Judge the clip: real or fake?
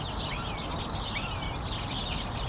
real